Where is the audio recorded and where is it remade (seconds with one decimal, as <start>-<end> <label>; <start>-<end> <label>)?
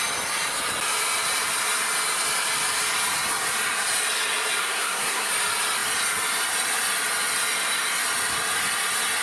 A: 0.0-4.6 recorded; 4.6-5.3 remade; 5.3-9.2 recorded